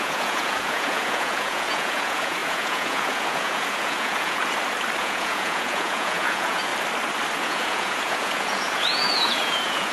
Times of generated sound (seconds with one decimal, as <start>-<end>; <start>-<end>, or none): 0.0-4.4; 5.0-6.7; 7.4-9.9